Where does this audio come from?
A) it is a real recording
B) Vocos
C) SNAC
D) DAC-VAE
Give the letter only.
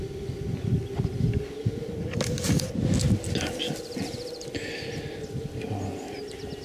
A